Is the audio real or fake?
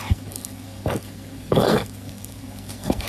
fake